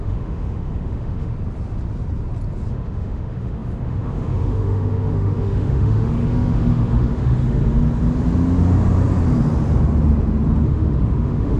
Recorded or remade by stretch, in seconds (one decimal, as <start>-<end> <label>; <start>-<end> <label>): 0.0-1.3 remade; 1.3-2.7 recorded; 2.7-7.6 remade; 7.6-10.7 recorded; 10.7-11.6 remade